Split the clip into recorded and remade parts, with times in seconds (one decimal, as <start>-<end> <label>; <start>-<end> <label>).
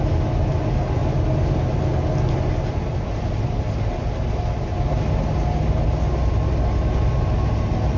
0.0-8.0 recorded